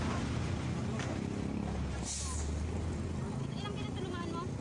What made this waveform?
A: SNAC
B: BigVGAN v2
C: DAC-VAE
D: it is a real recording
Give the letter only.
D